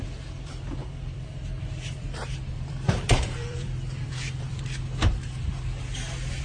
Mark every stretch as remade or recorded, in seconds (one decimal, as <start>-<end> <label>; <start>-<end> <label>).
0.0-0.8 recorded; 0.8-4.6 remade; 4.6-6.4 recorded